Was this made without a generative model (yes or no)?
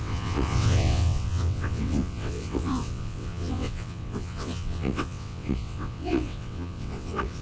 no